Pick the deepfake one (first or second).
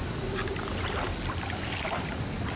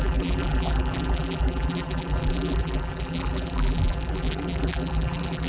second